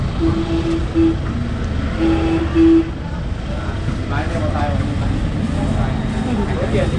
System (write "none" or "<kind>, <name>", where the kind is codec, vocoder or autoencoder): none